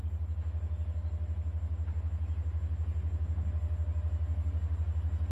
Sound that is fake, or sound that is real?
real